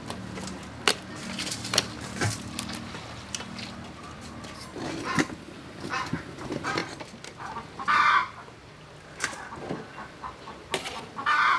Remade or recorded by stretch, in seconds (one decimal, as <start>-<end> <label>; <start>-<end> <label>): 0.0-11.6 recorded